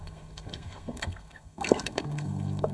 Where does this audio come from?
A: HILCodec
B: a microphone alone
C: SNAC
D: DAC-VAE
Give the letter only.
C